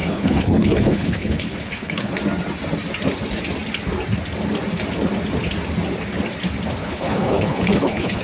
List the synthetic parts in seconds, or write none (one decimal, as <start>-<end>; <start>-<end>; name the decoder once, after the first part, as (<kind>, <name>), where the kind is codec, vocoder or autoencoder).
0.0-2.1 (codec, HILCodec); 6.8-8.2